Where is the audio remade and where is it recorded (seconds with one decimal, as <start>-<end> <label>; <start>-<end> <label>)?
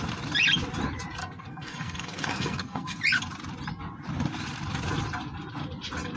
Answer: 0.0-1.2 recorded; 1.2-3.0 remade; 3.0-6.2 recorded